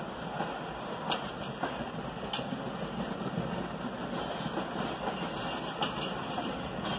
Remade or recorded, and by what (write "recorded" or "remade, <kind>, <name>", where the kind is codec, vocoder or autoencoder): recorded